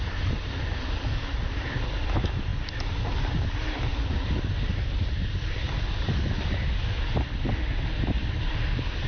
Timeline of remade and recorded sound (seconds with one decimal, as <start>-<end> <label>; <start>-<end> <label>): 0.0-9.1 recorded